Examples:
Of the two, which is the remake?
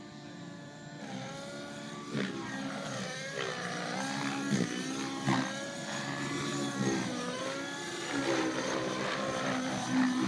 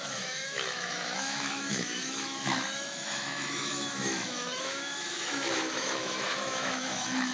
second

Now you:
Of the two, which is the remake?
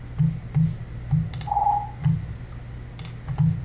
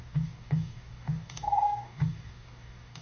second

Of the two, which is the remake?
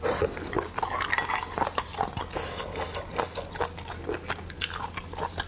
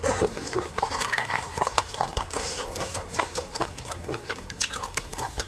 second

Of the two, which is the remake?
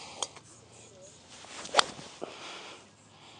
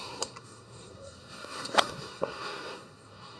second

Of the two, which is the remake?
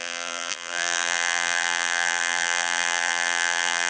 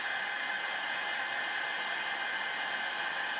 first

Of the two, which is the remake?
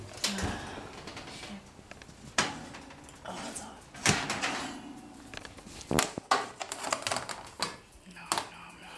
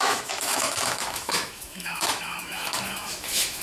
second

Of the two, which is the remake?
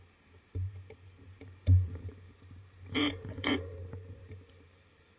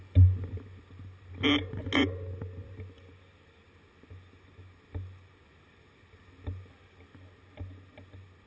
first